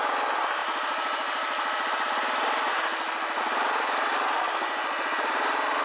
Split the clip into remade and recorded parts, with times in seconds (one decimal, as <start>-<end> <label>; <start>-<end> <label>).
0.0-5.8 recorded